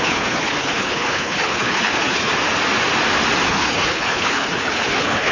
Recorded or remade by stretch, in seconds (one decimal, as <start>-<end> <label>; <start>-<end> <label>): 0.0-2.3 remade; 2.3-3.5 recorded; 3.5-5.3 remade